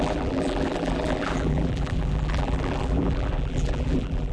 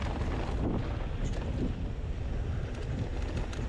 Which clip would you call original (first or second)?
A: second